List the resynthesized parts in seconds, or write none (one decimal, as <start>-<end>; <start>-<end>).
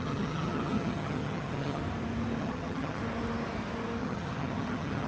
0.0-1.8; 2.4-3.0; 4.0-5.1